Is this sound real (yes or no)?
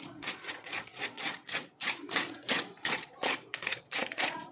no